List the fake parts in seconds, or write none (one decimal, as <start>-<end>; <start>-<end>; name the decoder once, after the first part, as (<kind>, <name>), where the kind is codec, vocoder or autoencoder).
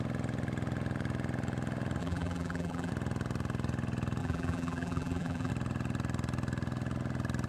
2.0-2.9 (vocoder, BigVGAN v2); 4.2-5.5